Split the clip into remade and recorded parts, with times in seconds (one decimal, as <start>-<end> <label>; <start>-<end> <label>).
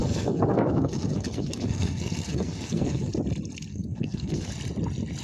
0.0-3.1 remade; 3.1-3.7 recorded; 3.7-4.5 remade; 4.5-5.2 recorded